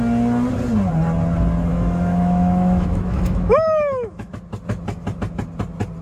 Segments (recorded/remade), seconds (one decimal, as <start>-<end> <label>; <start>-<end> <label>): 0.0-1.7 recorded; 1.7-4.3 remade; 4.3-6.0 recorded